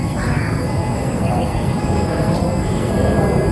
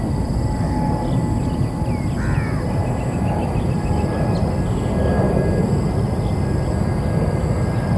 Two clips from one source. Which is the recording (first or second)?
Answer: second